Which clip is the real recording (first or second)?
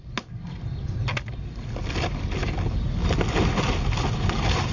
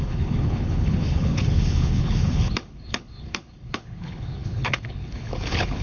first